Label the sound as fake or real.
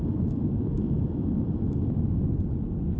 fake